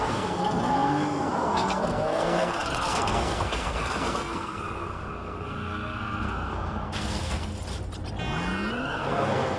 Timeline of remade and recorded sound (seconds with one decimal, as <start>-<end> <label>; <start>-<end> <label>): 0.0-7.5 remade; 7.5-8.8 recorded; 8.8-9.6 remade